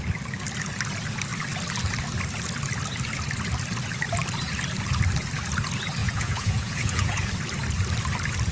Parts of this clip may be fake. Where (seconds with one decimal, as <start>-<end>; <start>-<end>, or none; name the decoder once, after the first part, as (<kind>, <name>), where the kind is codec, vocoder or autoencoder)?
6.0-7.3 (vocoder, Vocos)